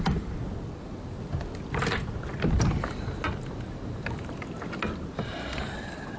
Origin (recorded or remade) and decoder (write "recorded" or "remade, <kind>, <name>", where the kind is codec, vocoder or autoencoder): recorded